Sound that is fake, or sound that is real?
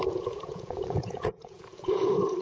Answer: fake